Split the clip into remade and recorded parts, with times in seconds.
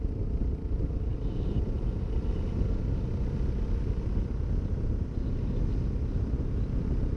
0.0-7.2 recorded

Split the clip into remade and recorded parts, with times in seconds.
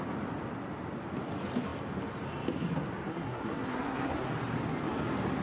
0.0-3.1 recorded; 3.1-4.3 remade; 4.3-5.4 recorded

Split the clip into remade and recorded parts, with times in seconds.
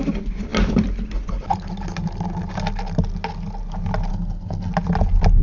0.0-4.1 recorded; 4.1-4.7 remade; 4.7-5.4 recorded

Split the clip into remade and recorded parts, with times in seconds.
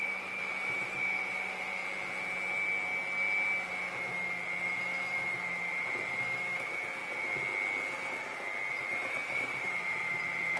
0.0-1.8 remade; 1.8-4.6 recorded; 4.6-7.0 remade; 7.0-8.7 recorded; 8.7-10.6 remade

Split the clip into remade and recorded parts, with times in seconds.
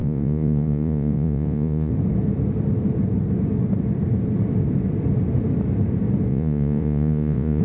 0.0-1.9 remade; 1.9-6.3 recorded; 6.3-7.6 remade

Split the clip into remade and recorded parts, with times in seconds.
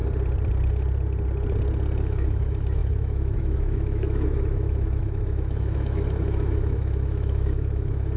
0.0-2.0 recorded; 2.0-8.2 remade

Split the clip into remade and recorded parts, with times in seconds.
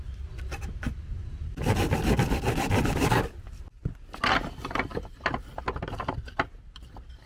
0.0-4.9 recorded; 4.9-5.6 remade; 5.6-7.3 recorded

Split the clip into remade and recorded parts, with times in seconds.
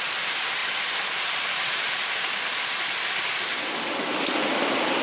0.0-0.6 recorded; 0.6-3.6 remade; 3.6-5.0 recorded